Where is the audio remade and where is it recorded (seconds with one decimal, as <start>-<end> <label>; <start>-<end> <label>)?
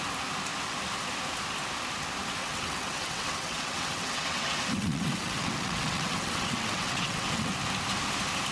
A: 0.0-2.4 recorded; 2.4-7.5 remade; 7.5-8.5 recorded